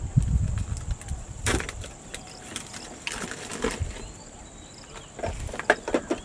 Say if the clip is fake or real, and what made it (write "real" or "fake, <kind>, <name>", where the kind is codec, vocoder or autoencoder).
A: fake, vocoder, BigVGAN v2